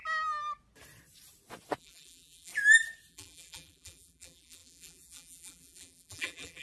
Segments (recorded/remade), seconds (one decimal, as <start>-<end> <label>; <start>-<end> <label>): 0.0-1.8 recorded; 1.8-2.5 remade; 2.5-3.1 recorded; 3.1-6.6 remade

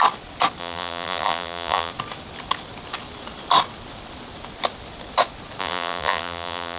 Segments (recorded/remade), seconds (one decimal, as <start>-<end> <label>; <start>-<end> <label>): 0.0-0.6 recorded; 0.6-1.9 remade; 1.9-5.6 recorded; 5.6-6.8 remade

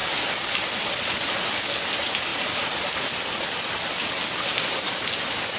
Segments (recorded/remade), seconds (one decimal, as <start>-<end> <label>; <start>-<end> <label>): 0.0-1.6 remade; 1.6-2.3 recorded; 2.3-3.9 remade; 3.9-5.6 recorded

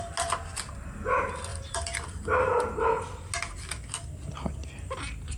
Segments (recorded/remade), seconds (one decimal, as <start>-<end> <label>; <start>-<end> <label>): 0.0-1.5 recorded; 1.5-2.6 remade; 2.6-5.4 recorded

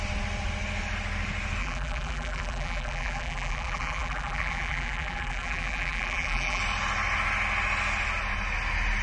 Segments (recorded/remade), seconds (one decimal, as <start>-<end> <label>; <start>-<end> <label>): 0.0-1.6 recorded; 1.6-6.6 remade; 6.6-9.0 recorded

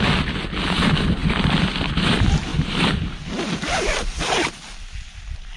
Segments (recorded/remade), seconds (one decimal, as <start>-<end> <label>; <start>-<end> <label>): 0.0-1.2 recorded; 1.2-1.9 remade; 1.9-5.6 recorded

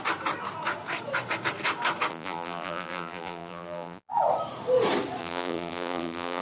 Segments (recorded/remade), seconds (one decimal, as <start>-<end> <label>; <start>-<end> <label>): 0.0-2.1 recorded; 2.1-4.1 remade; 4.1-5.2 recorded; 5.2-6.4 remade